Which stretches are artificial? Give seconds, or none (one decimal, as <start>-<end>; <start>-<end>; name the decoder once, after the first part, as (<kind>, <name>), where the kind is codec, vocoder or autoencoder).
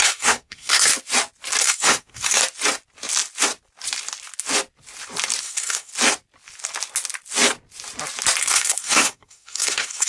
0.0-0.9 (codec, SNAC); 1.6-2.4; 5.4-5.9; 8.4-10.1